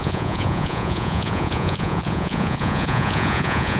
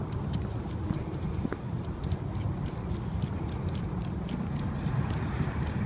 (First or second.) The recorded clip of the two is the second